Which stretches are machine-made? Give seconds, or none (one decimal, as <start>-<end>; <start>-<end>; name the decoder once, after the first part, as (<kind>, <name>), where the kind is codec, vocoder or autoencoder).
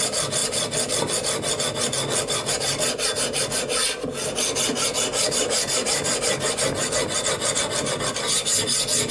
none